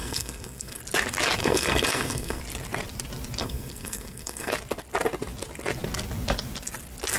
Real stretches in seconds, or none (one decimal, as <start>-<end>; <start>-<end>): 0.8-1.4; 2.4-3.4; 4.5-7.2